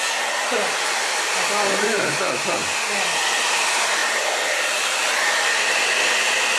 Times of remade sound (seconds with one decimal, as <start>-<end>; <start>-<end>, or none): none